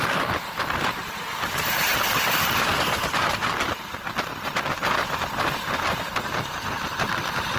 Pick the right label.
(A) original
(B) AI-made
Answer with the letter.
A